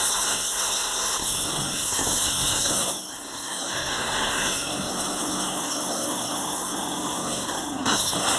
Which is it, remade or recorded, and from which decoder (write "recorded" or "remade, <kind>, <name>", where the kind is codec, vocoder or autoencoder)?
remade, codec, SNAC